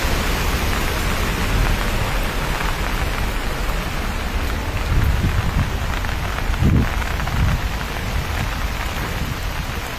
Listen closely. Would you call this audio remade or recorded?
recorded